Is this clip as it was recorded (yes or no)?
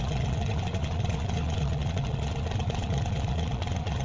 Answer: no